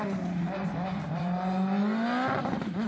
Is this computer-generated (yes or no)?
no